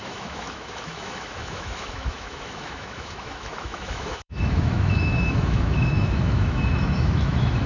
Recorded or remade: remade